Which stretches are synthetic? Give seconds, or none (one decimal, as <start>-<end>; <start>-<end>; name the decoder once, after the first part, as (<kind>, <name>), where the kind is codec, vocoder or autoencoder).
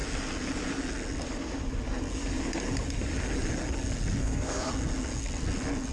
4.2-4.7 (codec, SNAC)